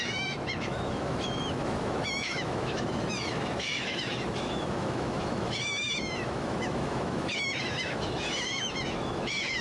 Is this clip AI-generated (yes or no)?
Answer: yes